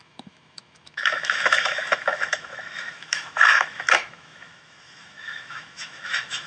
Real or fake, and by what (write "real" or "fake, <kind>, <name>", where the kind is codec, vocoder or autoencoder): fake, autoencoder, DAC-VAE